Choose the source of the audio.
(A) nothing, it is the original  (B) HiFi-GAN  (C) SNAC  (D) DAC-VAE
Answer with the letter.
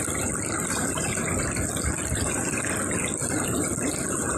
A